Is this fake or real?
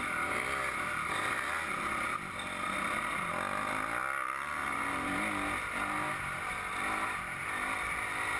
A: real